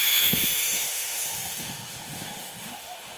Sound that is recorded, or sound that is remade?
remade